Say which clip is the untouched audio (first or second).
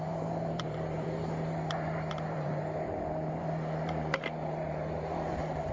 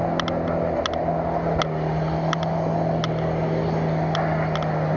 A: second